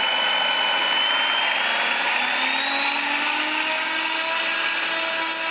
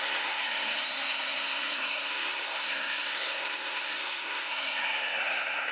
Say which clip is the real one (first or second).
first